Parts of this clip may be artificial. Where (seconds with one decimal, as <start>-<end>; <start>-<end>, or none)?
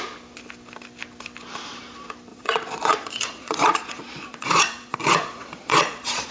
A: 2.3-6.3